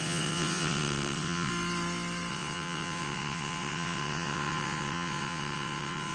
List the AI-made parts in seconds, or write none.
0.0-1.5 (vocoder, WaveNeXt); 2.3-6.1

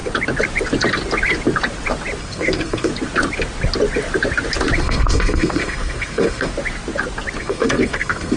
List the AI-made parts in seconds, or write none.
2.2-2.9 (codec, SNAC); 4.8-6.5; 7.4-8.4

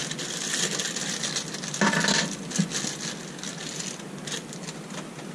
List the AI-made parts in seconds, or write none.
none